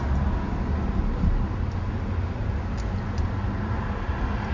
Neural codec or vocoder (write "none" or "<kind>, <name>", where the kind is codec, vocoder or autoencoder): none